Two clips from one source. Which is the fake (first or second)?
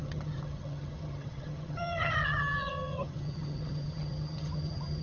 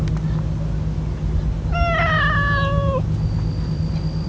first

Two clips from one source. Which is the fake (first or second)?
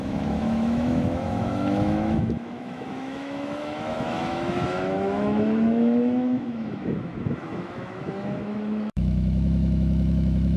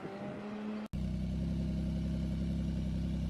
first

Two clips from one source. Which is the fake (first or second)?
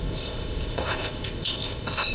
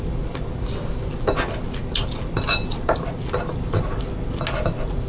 first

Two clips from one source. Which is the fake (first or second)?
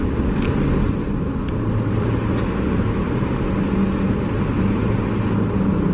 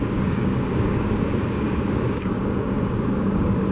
second